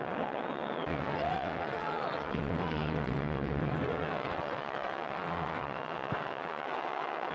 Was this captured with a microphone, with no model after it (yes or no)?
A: no